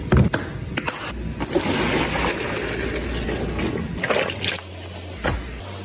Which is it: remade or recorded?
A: recorded